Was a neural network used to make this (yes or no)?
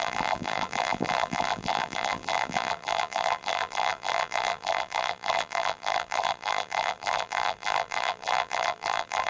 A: yes